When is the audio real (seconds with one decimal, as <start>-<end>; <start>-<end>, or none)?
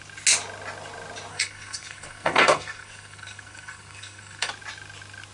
0.0-1.3; 4.5-5.3